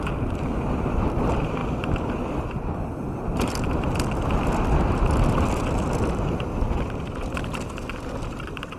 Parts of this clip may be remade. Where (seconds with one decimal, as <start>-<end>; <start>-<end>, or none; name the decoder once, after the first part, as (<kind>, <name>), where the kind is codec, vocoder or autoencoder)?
none